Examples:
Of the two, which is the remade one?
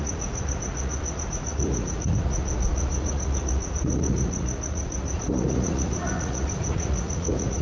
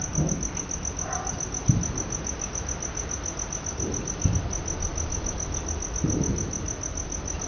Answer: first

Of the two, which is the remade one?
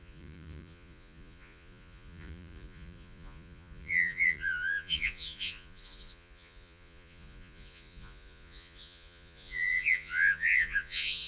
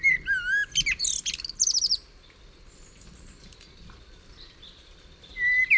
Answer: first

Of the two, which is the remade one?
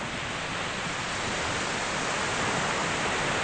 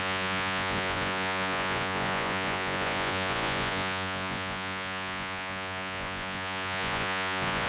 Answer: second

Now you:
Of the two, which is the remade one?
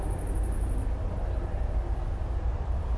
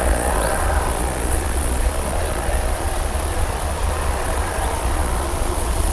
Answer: second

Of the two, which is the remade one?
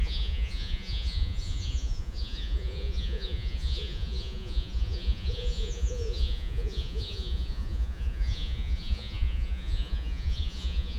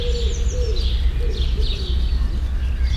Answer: first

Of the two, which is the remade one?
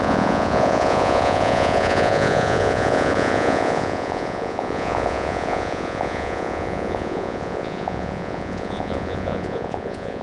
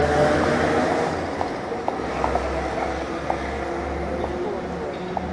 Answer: first